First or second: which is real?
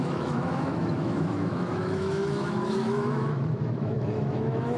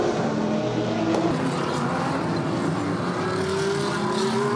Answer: second